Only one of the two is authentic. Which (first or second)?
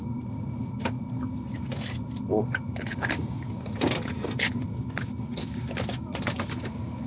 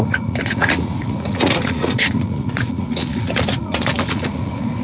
first